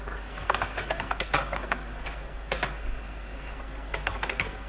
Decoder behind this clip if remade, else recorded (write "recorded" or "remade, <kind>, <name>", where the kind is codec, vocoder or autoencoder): remade, codec, SNAC